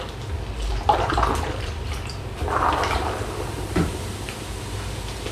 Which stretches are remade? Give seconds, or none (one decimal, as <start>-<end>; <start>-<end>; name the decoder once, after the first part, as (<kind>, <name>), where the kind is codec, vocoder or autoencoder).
0.7-3.9 (vocoder, BigVGAN v2)